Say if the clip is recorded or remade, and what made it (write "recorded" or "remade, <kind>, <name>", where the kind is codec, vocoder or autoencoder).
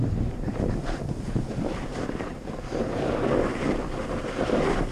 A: recorded